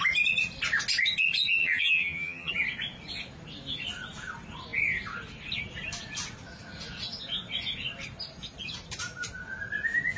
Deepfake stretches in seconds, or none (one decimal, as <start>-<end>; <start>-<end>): 1.6-2.5

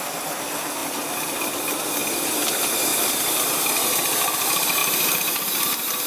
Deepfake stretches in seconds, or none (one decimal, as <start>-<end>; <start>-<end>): 2.9-3.7; 4.8-5.6